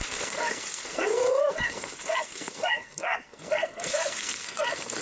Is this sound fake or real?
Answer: fake